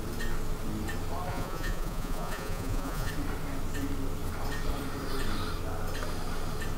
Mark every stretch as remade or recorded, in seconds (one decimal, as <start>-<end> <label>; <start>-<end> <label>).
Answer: 0.0-1.3 recorded; 1.3-3.1 remade; 3.1-6.8 recorded